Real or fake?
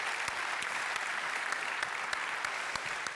real